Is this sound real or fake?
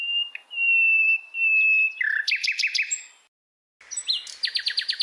real